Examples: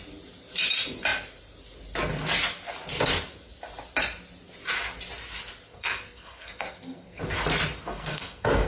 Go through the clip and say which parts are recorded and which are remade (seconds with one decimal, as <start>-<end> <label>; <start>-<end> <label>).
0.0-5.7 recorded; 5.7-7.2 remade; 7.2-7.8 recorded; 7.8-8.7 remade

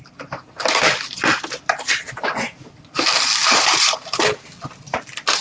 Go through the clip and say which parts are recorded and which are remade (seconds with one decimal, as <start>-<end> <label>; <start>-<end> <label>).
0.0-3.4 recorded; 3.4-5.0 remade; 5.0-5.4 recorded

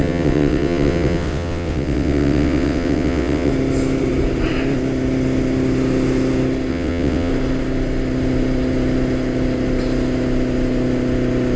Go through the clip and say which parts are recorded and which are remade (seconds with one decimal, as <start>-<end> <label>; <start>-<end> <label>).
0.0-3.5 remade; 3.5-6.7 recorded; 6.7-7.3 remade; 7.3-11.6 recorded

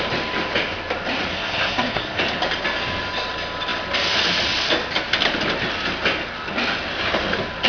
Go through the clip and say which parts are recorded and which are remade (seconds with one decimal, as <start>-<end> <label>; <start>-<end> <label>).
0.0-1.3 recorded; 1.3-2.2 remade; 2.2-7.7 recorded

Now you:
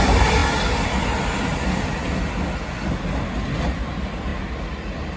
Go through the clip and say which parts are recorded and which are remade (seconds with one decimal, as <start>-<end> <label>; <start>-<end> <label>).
0.0-5.2 recorded